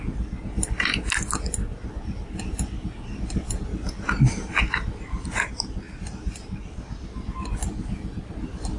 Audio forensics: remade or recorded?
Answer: recorded